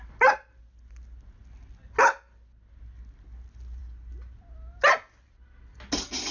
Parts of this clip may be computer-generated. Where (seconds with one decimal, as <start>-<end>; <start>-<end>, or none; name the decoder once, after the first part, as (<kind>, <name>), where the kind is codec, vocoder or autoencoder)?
none